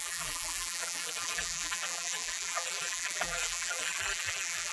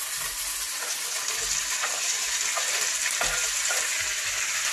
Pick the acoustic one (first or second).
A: second